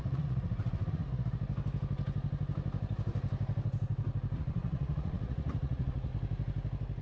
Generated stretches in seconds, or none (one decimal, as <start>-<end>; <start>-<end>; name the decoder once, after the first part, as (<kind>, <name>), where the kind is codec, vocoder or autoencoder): 0.0-1.0 (vocoder, Vocos); 4.4-6.1